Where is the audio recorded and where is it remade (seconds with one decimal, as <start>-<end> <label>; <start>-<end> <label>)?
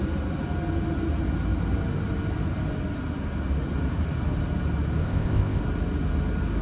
0.0-5.0 recorded; 5.0-5.6 remade; 5.6-6.6 recorded